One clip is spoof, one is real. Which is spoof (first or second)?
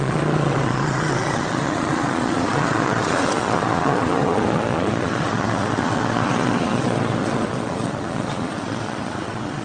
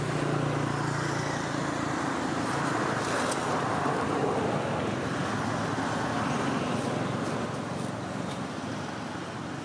first